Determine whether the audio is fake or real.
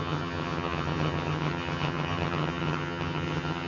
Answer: fake